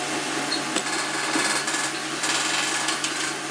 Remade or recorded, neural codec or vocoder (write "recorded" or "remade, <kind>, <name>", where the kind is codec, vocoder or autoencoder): recorded